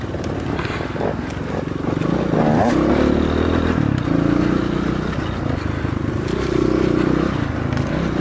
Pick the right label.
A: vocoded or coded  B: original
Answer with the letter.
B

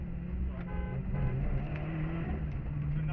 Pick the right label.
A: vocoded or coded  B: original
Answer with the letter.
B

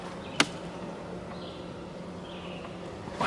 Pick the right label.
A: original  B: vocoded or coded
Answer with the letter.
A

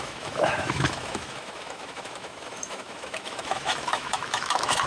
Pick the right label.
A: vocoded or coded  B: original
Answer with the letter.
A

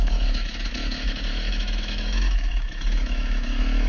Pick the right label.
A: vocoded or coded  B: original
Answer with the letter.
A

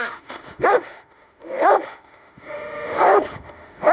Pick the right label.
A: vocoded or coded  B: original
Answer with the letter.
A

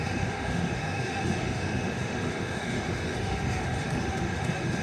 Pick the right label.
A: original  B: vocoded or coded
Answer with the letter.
B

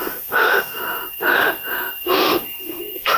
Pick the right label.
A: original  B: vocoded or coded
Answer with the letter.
B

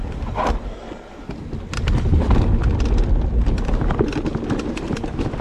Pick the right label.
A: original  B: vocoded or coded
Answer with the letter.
A